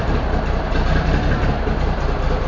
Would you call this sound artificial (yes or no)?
no